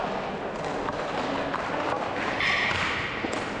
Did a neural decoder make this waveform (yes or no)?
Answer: no